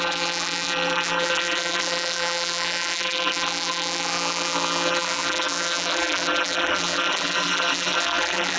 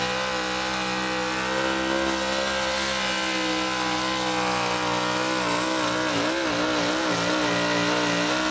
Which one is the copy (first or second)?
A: first